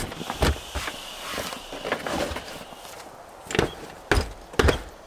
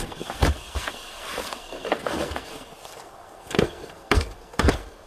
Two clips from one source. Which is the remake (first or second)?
second